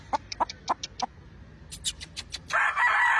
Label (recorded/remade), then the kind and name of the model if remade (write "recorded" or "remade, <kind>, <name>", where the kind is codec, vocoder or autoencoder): recorded